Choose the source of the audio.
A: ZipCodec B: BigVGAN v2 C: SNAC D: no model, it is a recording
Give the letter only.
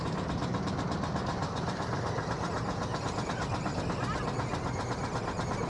B